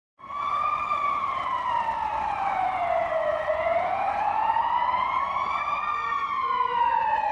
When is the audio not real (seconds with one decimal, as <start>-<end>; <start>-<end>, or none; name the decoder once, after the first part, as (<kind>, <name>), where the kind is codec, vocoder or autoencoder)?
0.0-1.4 (vocoder, Vocos); 2.2-7.3